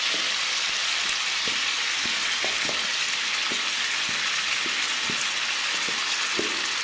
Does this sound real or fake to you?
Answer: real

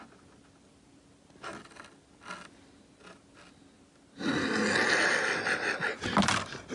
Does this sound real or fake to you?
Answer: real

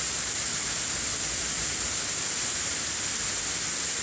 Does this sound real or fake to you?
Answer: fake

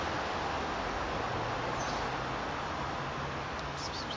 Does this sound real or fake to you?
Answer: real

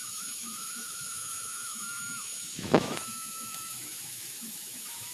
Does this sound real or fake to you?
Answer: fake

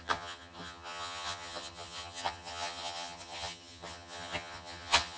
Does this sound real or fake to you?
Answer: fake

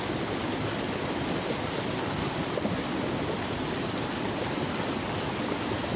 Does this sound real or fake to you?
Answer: real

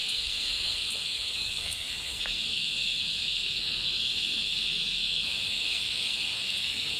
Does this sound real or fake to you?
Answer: fake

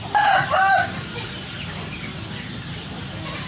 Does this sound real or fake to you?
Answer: real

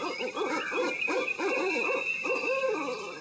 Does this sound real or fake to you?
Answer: real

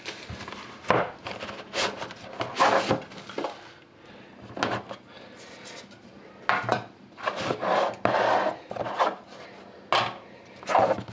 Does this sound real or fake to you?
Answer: real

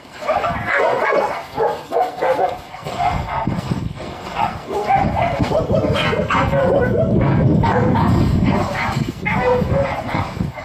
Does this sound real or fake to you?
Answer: fake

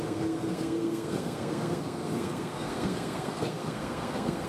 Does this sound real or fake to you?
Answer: fake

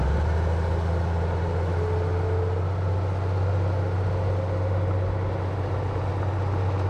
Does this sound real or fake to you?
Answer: real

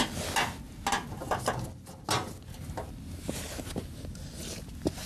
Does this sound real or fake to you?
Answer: real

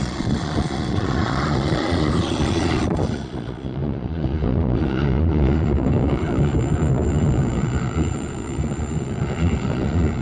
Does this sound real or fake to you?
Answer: fake